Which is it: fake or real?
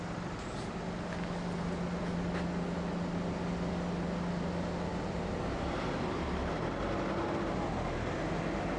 real